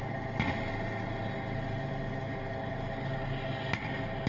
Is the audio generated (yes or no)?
no